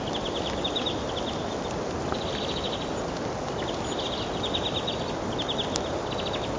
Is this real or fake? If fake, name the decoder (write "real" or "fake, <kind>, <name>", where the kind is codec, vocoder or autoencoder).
real